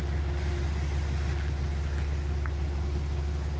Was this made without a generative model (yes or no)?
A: yes